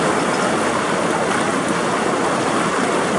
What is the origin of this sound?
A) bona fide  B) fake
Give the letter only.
A